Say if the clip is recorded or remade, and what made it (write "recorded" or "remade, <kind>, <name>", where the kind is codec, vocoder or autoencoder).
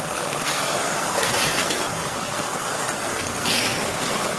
remade, codec, SNAC